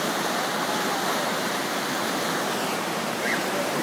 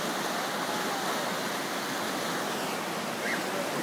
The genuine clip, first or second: second